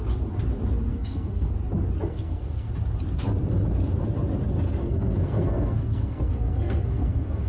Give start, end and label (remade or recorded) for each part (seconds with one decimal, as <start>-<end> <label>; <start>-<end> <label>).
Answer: 0.0-0.9 recorded; 0.9-1.5 remade; 1.5-2.1 recorded; 2.1-2.7 remade; 2.7-4.8 recorded; 4.8-7.5 remade